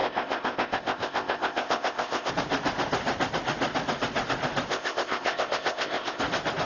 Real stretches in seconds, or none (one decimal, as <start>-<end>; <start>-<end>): 2.3-4.7; 6.2-6.7